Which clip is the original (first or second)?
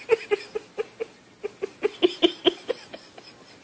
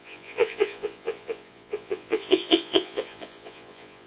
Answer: first